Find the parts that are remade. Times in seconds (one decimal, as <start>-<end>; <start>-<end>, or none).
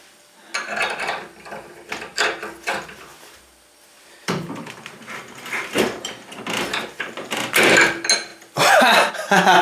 3.1-7.7; 8.3-9.1